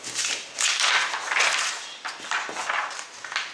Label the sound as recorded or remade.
recorded